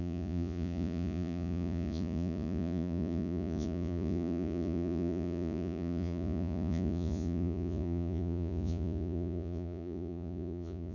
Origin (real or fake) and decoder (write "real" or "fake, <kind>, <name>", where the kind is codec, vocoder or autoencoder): fake, vocoder, Vocos